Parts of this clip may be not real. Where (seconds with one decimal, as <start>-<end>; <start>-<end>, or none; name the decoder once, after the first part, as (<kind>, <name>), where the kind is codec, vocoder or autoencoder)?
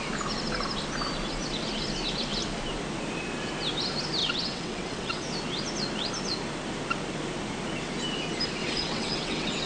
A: 4.2-5.3 (vocoder, WaveNeXt); 8.6-9.7